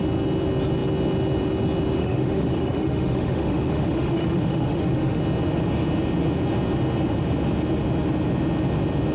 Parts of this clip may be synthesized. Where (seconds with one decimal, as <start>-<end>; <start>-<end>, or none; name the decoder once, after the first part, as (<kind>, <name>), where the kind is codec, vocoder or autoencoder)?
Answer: 2.0-5.2 (autoencoder, DAC-VAE)